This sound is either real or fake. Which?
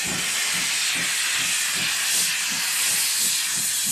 real